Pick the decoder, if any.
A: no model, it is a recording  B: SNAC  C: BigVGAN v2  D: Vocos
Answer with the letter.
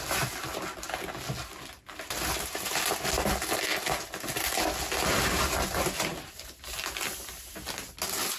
A